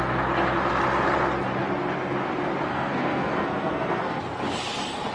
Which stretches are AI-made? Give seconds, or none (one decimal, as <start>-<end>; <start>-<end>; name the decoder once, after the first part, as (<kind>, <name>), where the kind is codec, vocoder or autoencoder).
2.7-4.2 (codec, SNAC)